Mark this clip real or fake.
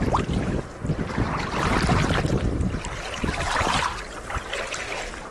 real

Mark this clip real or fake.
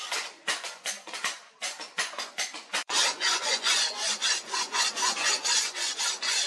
fake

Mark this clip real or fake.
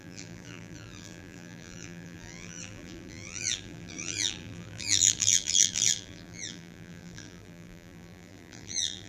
fake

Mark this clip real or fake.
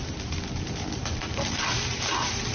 fake